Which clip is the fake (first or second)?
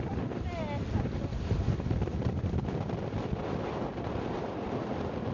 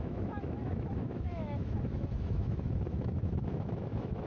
second